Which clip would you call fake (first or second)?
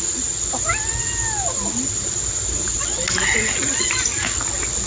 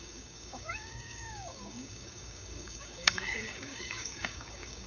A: second